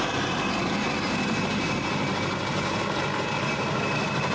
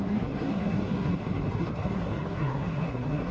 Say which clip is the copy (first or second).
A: second